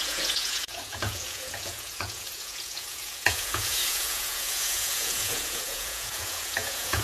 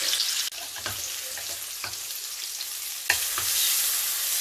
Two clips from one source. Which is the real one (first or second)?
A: second